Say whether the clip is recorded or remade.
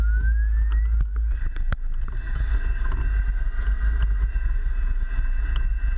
recorded